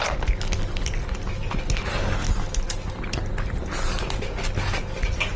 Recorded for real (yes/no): yes